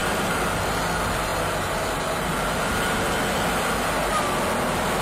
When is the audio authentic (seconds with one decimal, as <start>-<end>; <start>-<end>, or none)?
0.0-5.0